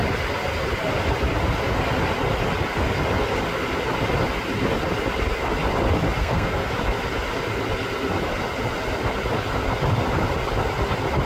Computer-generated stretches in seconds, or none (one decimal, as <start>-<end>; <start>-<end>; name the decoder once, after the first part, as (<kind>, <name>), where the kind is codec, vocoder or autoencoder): 6.2-6.7 (codec, SNAC)